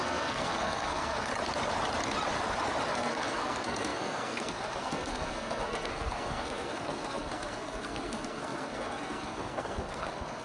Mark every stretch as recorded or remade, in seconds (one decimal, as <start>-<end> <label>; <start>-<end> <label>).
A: 0.0-1.3 remade; 1.3-2.9 recorded; 2.9-10.4 remade